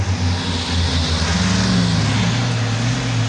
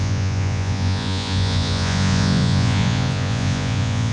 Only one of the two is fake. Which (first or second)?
second